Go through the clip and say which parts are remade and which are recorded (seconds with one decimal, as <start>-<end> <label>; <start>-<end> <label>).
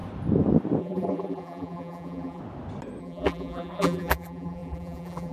0.0-0.8 recorded; 0.8-2.4 remade; 2.4-3.0 recorded; 3.0-5.3 remade